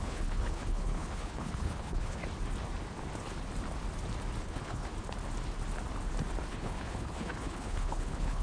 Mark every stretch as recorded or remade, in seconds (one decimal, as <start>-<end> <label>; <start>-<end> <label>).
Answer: 0.0-2.2 remade; 2.2-4.4 recorded; 4.4-4.9 remade; 4.9-6.5 recorded; 6.5-8.4 remade